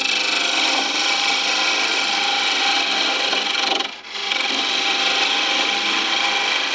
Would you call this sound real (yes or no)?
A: yes